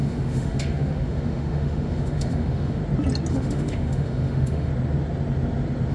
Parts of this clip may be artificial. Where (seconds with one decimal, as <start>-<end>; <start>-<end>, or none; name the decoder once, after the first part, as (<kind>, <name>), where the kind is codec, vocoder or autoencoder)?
0.0-2.8 (autoencoder, DAC-VAE); 3.3-4.7